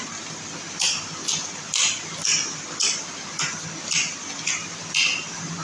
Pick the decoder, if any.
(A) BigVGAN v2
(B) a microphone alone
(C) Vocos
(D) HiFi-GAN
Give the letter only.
B